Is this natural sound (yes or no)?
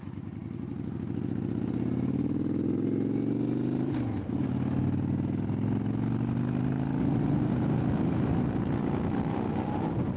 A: yes